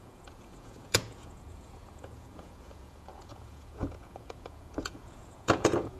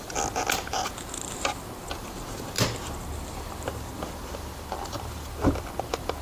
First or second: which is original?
second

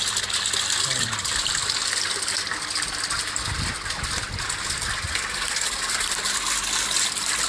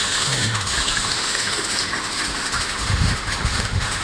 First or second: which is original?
first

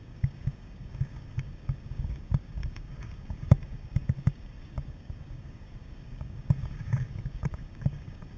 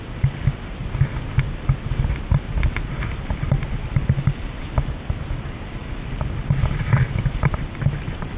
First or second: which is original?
second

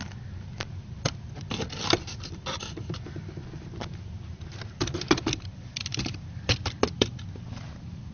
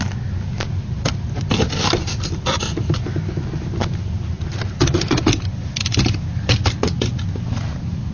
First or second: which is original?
second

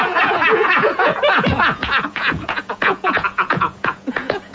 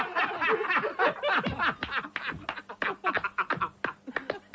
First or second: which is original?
second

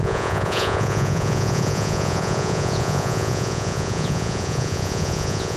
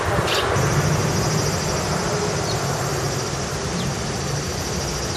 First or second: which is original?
second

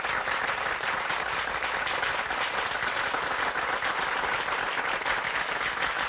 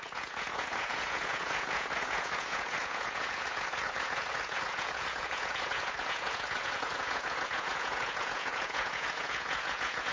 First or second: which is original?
first